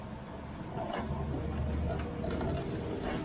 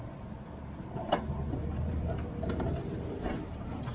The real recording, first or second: first